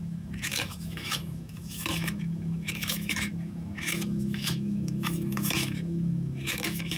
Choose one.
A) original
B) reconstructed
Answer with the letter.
B